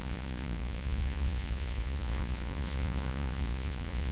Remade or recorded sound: remade